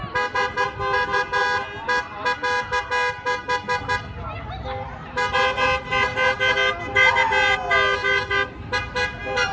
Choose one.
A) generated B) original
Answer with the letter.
B